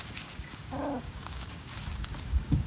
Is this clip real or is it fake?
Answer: fake